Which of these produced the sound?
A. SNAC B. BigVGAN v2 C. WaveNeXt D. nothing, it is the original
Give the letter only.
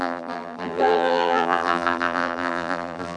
B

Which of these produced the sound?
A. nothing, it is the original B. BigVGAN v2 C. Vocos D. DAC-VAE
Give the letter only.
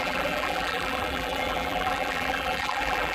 B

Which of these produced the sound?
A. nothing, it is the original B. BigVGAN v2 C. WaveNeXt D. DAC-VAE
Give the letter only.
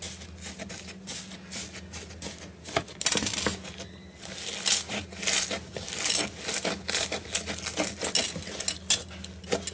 A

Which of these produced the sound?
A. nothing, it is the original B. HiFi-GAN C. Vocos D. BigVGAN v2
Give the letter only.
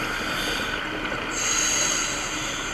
A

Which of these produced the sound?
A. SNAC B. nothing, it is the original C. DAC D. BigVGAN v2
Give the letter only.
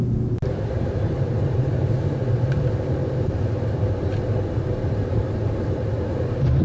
D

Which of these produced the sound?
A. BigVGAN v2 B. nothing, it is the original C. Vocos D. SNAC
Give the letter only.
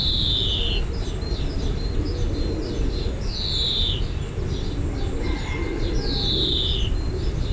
B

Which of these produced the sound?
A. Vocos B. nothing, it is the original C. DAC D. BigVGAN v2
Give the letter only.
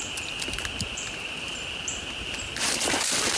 B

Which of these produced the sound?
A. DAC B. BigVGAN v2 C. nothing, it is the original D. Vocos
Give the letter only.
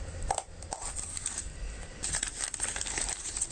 B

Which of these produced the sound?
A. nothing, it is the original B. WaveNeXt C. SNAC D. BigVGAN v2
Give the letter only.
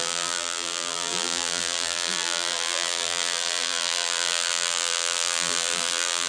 D